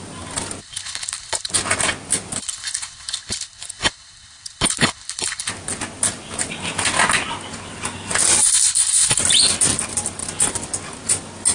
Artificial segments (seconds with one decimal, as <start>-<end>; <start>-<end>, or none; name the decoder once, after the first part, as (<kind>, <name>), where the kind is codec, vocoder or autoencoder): 0.6-1.5 (codec, HILCodec); 2.4-5.5; 8.4-9.2

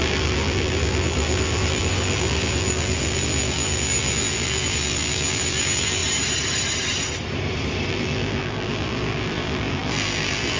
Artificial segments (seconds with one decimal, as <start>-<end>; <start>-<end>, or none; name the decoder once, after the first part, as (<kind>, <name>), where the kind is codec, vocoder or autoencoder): 0.0-6.0 (vocoder, BigVGAN v2); 7.9-10.6

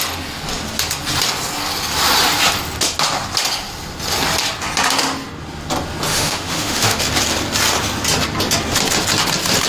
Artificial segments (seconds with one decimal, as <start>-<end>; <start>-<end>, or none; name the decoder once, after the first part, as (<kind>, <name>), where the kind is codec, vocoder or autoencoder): 6.1-7.0 (autoencoder, DAC-VAE)

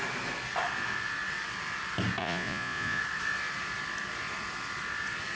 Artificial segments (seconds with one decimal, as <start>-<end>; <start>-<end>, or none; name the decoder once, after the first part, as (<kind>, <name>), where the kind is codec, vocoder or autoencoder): 2.2-3.0 (vocoder, Vocos)